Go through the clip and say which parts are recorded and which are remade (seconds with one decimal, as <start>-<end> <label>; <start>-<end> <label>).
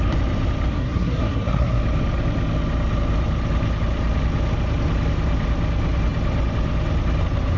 0.0-0.7 recorded; 0.7-1.8 remade; 1.8-7.6 recorded